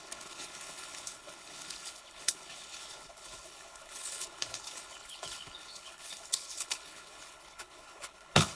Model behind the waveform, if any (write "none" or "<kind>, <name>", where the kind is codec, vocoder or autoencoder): codec, HILCodec